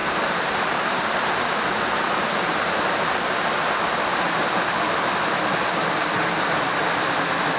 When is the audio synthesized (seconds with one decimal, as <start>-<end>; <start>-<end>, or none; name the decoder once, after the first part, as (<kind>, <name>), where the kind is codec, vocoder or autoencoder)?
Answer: 0.0-3.1 (vocoder, BigVGAN v2); 4.1-4.7